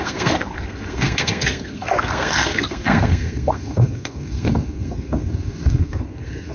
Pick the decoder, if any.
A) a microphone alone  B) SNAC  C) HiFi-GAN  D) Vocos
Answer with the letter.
B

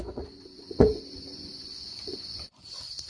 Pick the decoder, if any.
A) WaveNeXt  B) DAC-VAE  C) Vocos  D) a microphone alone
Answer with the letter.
C